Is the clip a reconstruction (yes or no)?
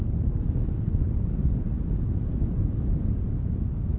no